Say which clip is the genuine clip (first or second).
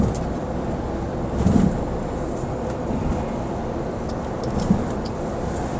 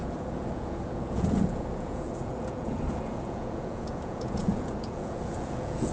first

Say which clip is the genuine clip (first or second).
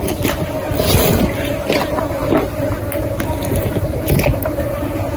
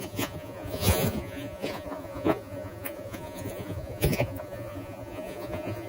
first